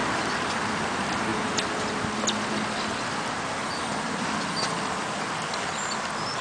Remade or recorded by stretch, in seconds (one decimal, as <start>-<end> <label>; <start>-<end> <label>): 0.0-6.4 recorded